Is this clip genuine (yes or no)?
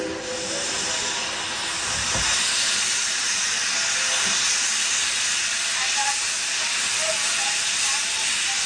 yes